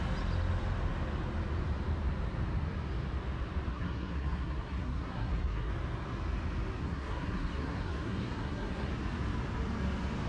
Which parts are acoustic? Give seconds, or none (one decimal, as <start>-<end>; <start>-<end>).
0.0-3.7; 5.7-6.8; 8.9-10.3